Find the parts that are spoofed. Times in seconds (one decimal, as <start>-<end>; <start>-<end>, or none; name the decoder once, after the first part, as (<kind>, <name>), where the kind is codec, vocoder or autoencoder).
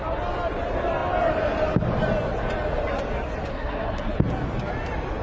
3.5-4.1 (codec, SNAC)